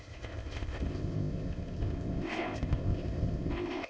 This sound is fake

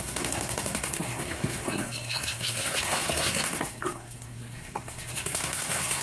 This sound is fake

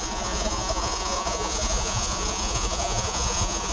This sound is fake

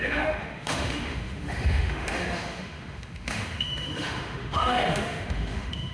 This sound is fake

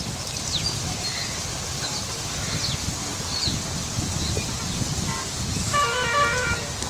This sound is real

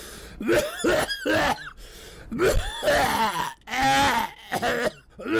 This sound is real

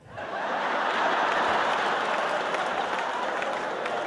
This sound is real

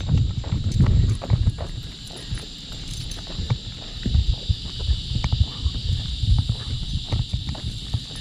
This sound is fake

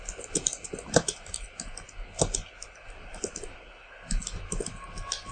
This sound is real